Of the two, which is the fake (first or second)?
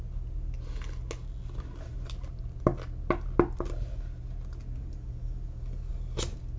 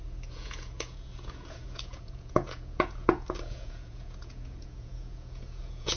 second